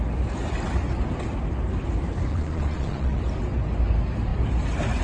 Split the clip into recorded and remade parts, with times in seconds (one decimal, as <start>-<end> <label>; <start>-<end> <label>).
0.0-2.3 recorded; 2.3-3.2 remade; 3.2-5.0 recorded